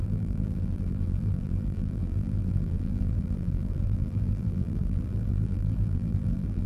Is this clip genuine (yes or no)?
no